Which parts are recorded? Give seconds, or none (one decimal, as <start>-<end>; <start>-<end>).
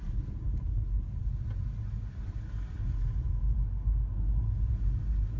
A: 0.0-5.4